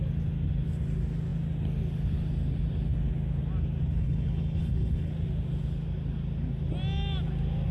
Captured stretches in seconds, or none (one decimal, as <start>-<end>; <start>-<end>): 0.0-4.0; 5.1-7.7